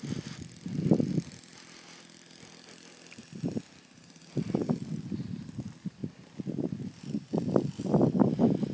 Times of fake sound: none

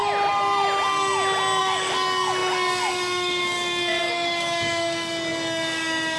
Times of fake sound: 1.6-6.2

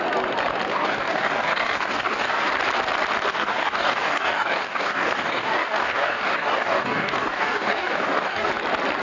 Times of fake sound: 0.7-2.5; 3.3-8.5

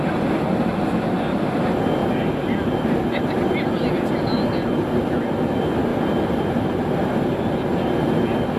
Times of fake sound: none

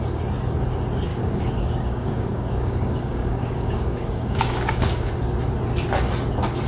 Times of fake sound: 1.1-5.1